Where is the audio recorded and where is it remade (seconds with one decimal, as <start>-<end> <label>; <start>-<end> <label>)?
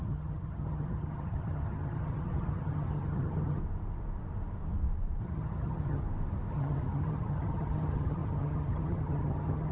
0.0-3.6 remade; 3.6-5.2 recorded; 5.2-6.0 remade; 6.0-6.5 recorded; 6.5-9.7 remade